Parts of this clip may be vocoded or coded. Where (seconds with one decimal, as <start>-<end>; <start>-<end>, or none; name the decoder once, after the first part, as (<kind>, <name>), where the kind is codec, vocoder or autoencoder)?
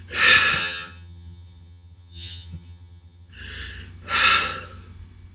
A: 0.6-3.3 (vocoder, HiFi-GAN)